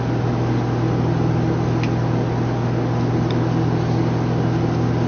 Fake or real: real